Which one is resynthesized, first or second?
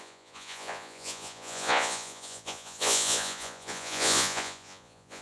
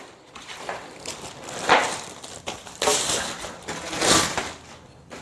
first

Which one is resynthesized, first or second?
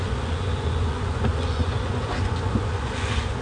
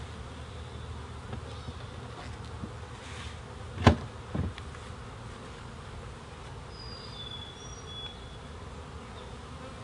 first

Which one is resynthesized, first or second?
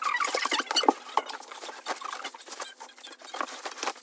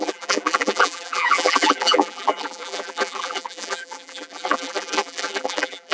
second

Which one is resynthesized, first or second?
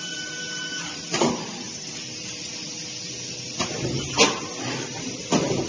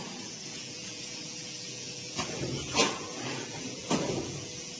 second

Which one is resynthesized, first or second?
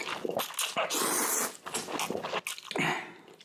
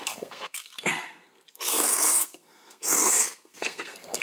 second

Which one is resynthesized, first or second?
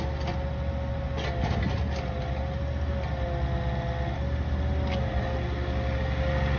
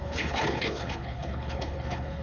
second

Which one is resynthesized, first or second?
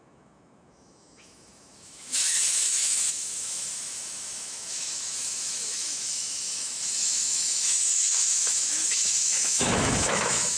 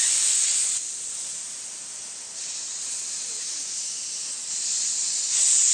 first